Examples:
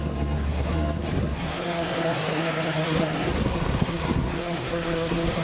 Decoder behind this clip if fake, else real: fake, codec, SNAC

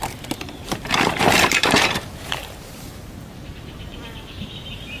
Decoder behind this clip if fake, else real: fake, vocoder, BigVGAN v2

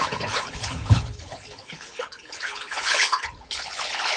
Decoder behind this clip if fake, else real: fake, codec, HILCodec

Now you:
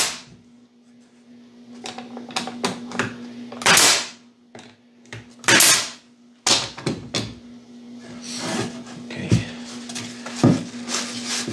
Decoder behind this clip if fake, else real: real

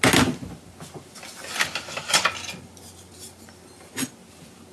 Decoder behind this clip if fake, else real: real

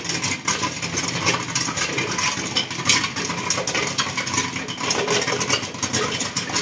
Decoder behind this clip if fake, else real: real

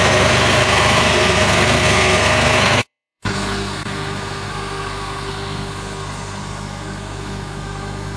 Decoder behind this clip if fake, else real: fake, codec, SNAC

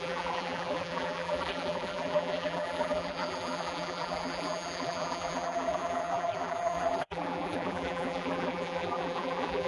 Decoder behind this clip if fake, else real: fake, vocoder, BigVGAN v2